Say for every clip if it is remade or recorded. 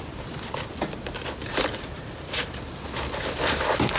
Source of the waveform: recorded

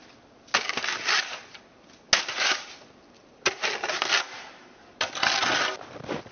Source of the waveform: recorded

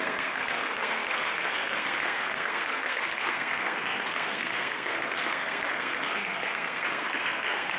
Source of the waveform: remade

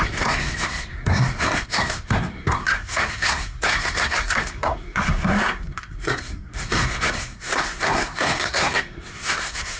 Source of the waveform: remade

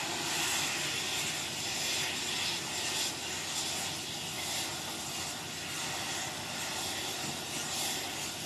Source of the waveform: recorded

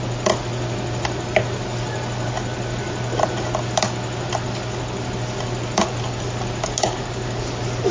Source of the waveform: recorded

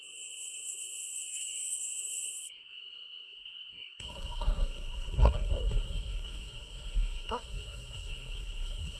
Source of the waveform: remade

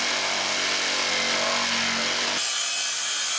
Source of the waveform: recorded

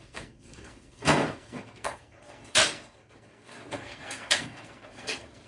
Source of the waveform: remade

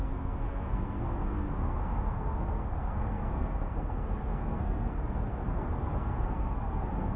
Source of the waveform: remade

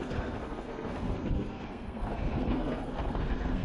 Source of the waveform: remade